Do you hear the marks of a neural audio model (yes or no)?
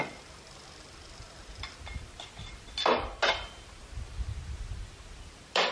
no